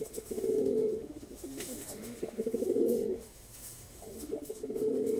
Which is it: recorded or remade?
remade